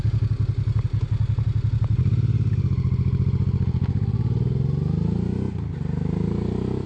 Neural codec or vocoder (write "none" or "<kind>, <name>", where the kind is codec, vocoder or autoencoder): none